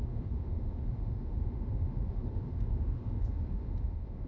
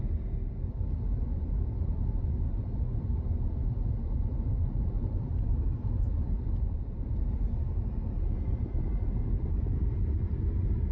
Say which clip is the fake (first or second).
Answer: first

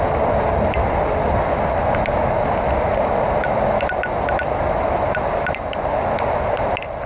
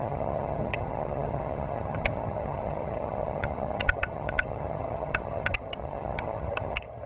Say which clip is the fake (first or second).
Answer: second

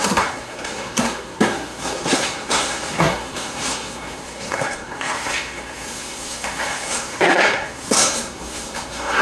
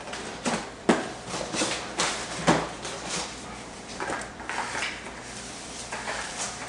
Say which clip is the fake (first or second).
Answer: first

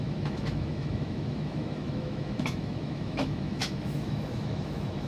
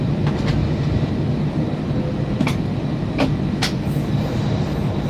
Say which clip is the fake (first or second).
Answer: first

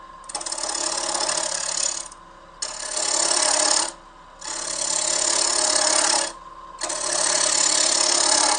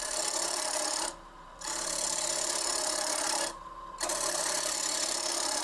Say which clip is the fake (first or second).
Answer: second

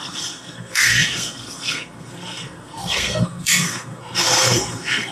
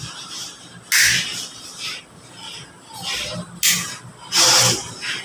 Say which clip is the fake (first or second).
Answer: first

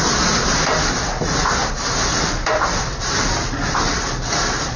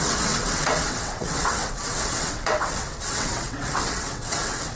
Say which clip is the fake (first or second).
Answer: second